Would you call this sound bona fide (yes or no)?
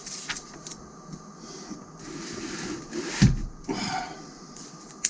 yes